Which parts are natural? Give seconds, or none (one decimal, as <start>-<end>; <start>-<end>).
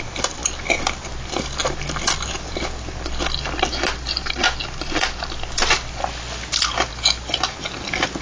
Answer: 0.0-8.2